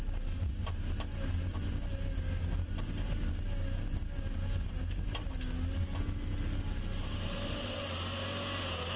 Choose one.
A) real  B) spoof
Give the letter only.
A